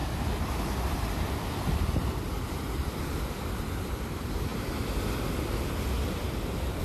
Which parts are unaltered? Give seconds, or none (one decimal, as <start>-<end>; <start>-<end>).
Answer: 0.0-0.9; 4.5-6.8